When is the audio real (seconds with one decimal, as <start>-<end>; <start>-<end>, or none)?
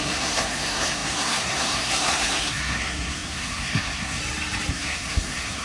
4.2-4.7